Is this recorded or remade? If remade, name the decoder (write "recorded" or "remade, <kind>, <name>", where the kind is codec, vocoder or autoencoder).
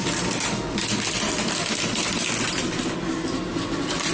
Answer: recorded